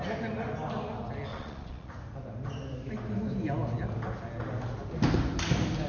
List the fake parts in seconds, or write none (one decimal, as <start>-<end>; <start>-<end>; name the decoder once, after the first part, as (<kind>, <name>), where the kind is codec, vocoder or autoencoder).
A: 1.3-1.9 (vocoder, Vocos)